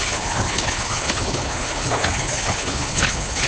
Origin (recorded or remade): remade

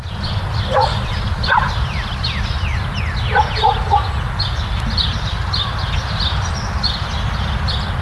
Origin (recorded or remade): recorded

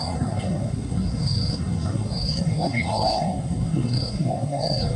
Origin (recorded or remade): remade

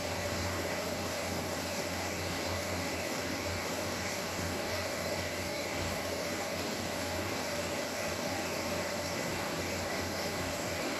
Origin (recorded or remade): remade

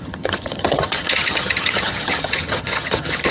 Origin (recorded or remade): remade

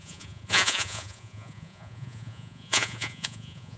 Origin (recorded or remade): remade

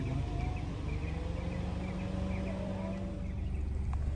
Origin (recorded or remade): recorded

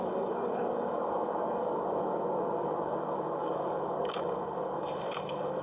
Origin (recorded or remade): remade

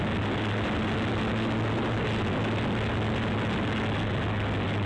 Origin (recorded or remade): recorded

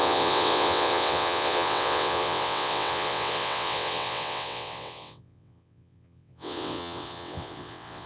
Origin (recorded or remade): remade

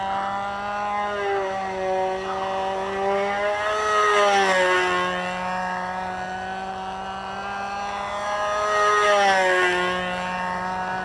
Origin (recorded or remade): recorded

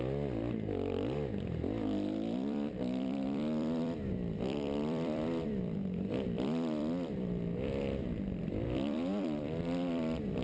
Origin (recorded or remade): remade